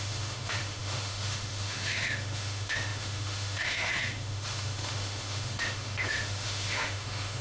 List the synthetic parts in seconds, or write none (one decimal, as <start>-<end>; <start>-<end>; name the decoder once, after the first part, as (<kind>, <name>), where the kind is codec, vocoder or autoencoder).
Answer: 0.0-7.4 (autoencoder, DAC-VAE)